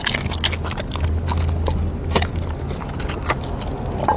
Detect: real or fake real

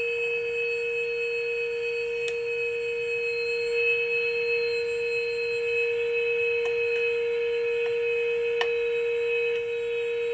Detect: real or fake real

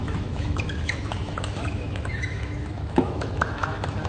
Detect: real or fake fake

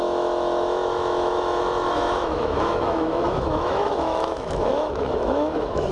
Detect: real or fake fake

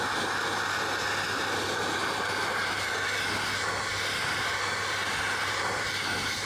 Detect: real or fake real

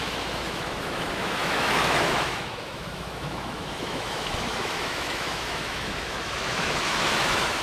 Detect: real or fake fake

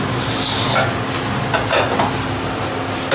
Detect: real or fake real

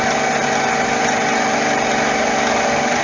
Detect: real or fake real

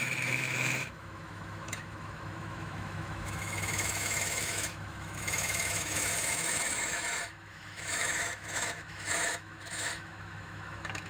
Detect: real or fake fake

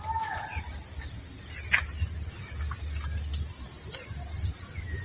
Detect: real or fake real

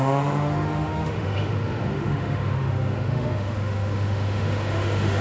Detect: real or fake fake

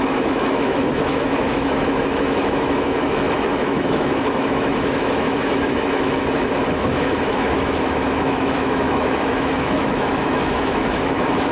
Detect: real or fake fake